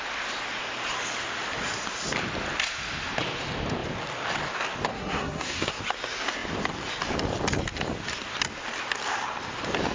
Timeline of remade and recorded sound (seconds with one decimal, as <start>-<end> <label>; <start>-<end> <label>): 0.0-4.9 recorded; 4.9-5.8 remade; 5.8-9.9 recorded